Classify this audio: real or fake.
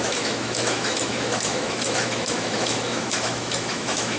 fake